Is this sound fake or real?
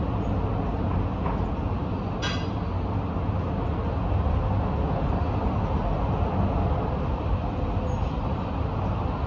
real